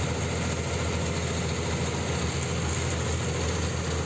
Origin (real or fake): real